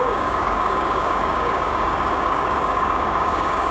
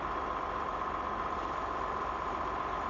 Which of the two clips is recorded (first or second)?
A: second